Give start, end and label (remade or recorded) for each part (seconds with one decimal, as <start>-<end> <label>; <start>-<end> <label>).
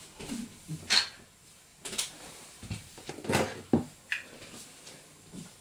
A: 0.0-1.7 recorded; 1.7-3.1 remade; 3.1-5.6 recorded